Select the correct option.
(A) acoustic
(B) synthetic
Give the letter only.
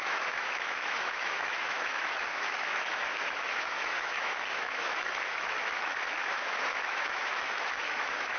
B